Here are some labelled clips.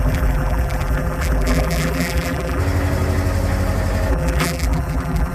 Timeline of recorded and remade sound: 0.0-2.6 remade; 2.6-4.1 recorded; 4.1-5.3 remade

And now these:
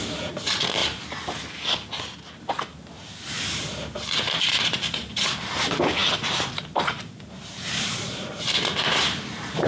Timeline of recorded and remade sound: 0.0-0.8 remade; 0.8-2.4 recorded; 2.4-9.7 remade

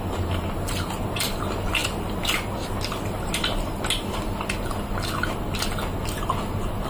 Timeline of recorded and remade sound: 0.0-6.9 recorded